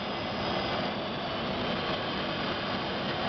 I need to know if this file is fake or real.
real